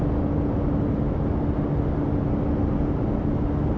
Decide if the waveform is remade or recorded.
recorded